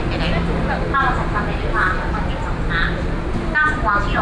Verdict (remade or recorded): recorded